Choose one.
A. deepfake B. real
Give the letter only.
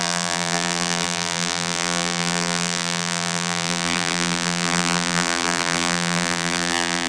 A